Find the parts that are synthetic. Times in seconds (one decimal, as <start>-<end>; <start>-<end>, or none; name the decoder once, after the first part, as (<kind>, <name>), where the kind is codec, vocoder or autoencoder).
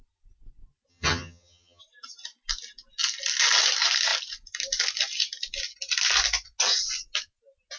0.9-1.8 (vocoder, HiFi-GAN)